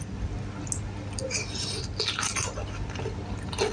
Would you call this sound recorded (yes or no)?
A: yes